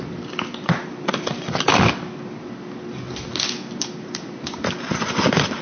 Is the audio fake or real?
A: real